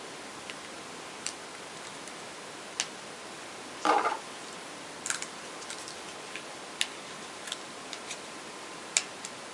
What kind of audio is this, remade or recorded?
recorded